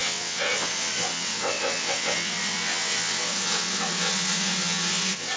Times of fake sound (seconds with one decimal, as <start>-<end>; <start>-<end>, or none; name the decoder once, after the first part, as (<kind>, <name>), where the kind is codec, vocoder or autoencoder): 0.0-5.4 (vocoder, WaveNeXt)